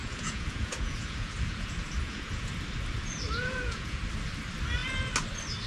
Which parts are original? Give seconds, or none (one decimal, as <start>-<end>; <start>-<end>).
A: 2.5-3.4; 4.0-5.7